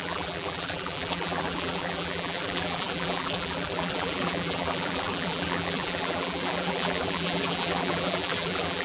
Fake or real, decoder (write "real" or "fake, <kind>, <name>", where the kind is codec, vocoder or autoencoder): fake, vocoder, BigVGAN v2